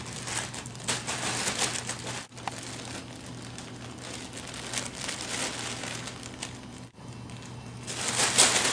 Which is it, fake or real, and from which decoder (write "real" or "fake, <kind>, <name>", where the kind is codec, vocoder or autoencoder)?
real